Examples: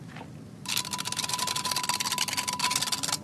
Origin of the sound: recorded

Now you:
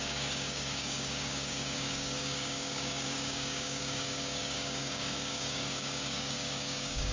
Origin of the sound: remade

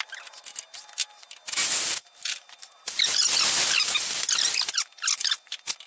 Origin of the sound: recorded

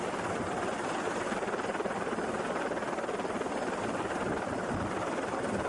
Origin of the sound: recorded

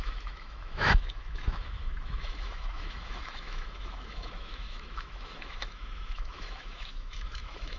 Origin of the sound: remade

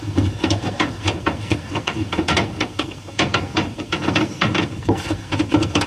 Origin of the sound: remade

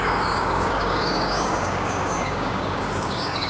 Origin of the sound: remade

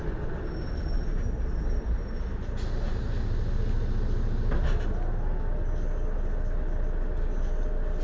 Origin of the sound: recorded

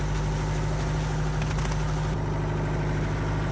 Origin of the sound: recorded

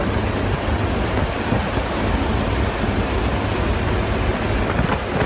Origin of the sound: recorded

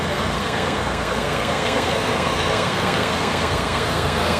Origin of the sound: remade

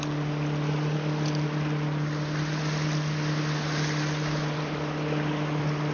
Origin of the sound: recorded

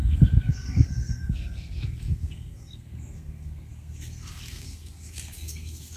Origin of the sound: remade